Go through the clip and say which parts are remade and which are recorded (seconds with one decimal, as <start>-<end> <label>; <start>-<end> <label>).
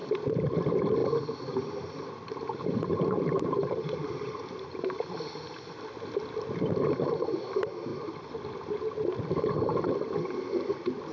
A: 0.0-0.6 remade; 0.6-1.0 recorded; 1.0-5.2 remade; 5.2-11.1 recorded